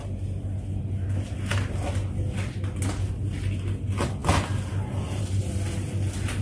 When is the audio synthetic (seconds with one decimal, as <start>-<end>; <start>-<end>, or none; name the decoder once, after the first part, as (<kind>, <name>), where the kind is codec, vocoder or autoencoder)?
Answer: none